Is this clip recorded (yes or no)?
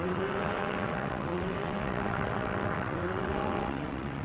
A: no